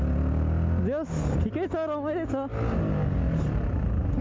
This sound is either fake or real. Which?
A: real